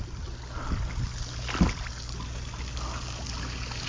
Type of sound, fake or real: real